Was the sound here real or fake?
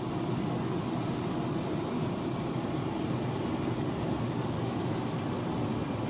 real